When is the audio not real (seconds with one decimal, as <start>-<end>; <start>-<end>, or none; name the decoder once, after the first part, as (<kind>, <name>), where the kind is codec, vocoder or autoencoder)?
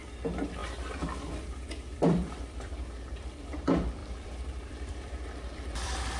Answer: 0.0-0.6 (vocoder, BigVGAN v2); 1.6-6.2